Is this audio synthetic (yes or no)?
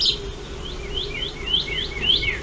no